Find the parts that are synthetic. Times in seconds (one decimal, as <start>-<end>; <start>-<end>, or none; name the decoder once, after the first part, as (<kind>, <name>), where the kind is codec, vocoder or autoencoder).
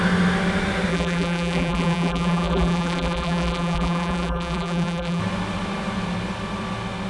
0.9-5.2 (vocoder, BigVGAN v2)